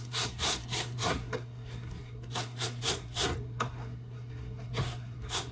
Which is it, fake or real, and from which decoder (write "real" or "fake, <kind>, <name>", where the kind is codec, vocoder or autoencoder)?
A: fake, codec, SNAC